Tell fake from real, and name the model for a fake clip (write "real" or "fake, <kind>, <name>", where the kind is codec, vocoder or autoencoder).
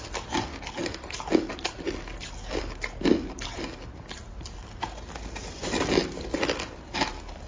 real